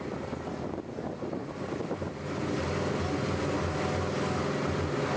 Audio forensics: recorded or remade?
recorded